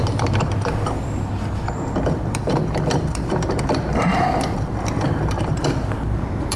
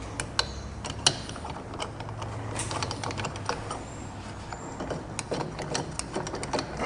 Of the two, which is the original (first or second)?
second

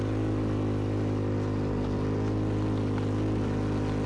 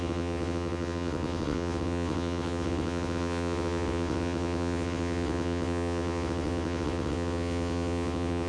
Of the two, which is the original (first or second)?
first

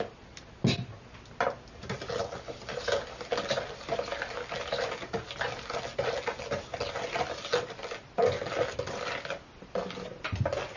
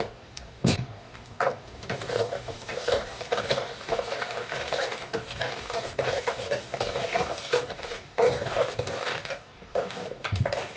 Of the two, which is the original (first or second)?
first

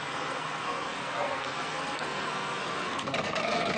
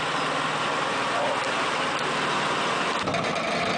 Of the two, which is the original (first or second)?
second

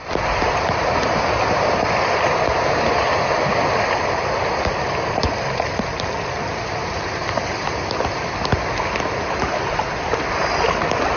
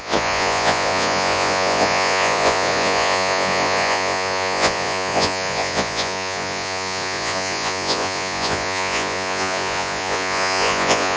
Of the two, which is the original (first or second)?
first